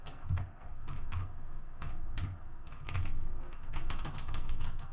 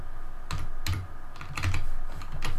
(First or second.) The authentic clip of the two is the second